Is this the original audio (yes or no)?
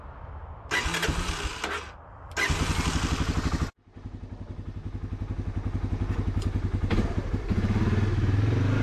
yes